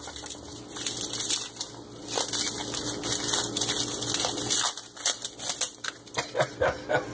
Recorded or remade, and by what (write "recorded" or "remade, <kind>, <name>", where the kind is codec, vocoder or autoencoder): recorded